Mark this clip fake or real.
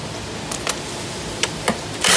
real